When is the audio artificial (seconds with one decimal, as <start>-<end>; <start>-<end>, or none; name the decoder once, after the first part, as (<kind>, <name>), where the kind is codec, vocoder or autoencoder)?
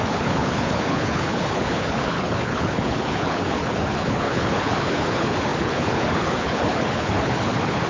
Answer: 0.0-7.9 (codec, HILCodec)